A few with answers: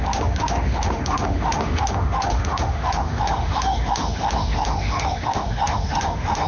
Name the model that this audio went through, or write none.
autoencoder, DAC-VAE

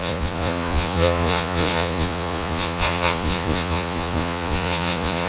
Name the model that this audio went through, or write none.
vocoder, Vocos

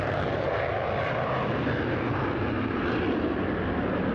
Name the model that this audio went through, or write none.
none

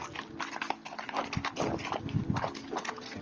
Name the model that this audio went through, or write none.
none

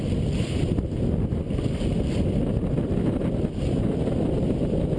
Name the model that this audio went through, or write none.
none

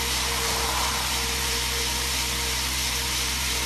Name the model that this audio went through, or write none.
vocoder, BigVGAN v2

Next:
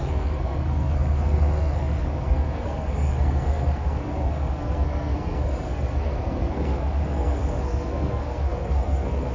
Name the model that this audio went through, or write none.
codec, SNAC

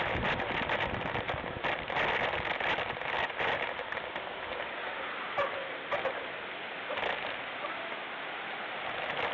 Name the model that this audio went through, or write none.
none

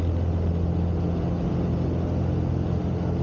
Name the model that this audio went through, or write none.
none